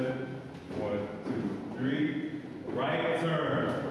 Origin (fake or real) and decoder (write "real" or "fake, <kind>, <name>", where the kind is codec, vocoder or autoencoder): real